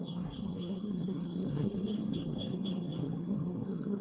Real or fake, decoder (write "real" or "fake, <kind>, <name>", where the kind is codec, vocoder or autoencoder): fake, codec, SNAC